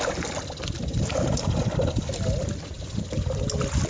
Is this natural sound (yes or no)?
yes